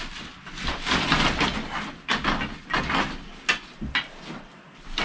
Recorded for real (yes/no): yes